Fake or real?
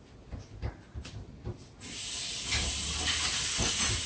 real